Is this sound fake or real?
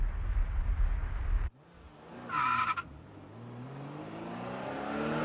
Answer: real